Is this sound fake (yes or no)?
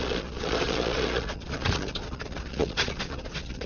yes